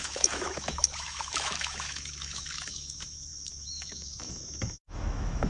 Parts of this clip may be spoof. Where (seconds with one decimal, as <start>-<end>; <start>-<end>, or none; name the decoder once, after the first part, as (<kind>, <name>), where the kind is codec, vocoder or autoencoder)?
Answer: 0.0-5.5 (autoencoder, DAC-VAE)